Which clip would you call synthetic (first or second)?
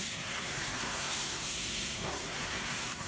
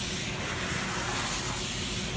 first